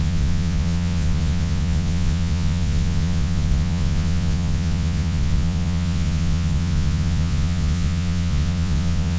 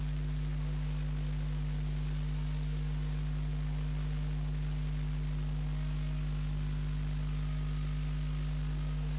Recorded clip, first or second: second